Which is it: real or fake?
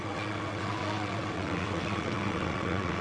fake